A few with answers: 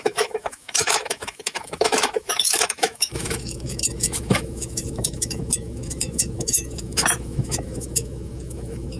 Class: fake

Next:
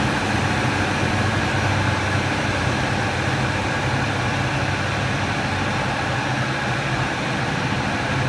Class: fake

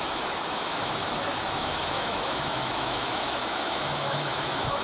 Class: fake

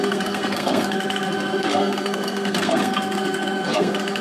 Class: fake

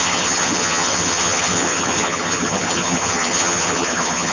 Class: fake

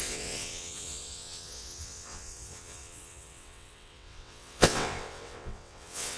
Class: fake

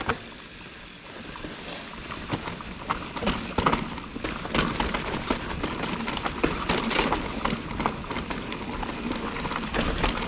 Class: real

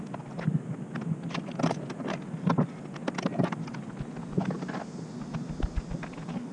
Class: real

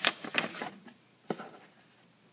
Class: real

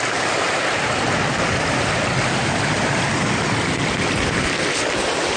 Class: real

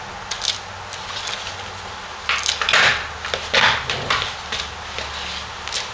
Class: real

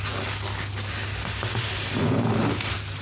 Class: real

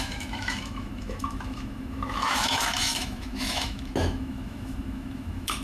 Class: fake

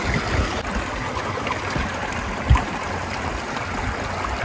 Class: real